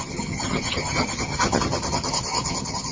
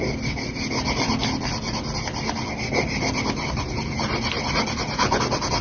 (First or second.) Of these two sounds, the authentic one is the second